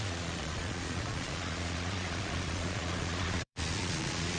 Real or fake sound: fake